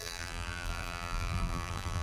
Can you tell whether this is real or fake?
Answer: fake